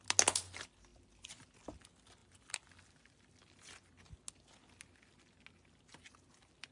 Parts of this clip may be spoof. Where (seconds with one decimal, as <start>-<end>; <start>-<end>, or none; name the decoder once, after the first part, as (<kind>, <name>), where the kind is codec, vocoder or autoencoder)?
0.9-1.5 (vocoder, BigVGAN v2); 2.2-3.4; 5.9-6.7